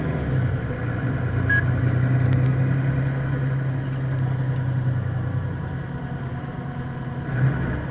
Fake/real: real